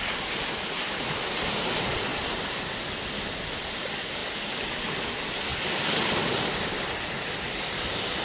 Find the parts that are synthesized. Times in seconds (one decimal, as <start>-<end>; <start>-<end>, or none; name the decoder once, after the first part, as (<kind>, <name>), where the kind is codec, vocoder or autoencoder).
2.1-3.2 (vocoder, BigVGAN v2); 5.5-7.2